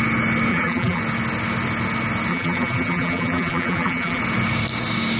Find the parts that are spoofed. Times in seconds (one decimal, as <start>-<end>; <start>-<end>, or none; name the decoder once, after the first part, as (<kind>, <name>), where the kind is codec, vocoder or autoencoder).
0.5-1.0 (vocoder, BigVGAN v2); 2.3-4.2

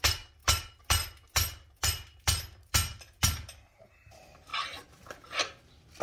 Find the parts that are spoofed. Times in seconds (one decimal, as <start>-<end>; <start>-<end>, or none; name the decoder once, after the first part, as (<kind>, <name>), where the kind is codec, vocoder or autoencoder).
none

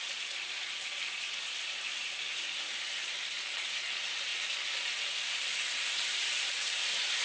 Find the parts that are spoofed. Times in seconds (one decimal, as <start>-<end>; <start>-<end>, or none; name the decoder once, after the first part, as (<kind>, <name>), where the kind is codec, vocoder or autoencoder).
0.0-4.3 (vocoder, BigVGAN v2); 5.9-7.2

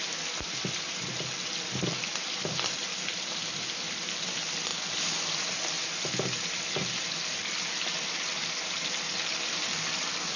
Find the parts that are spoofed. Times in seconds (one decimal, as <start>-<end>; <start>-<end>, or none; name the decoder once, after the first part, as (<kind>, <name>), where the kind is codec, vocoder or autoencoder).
none